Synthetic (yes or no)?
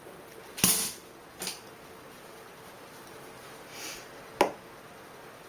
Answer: no